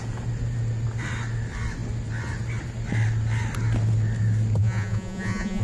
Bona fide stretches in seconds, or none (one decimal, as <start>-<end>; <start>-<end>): 0.0-4.6